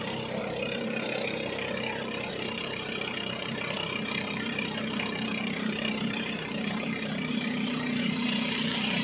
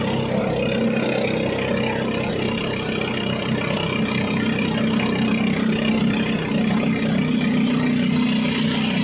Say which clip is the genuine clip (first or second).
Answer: second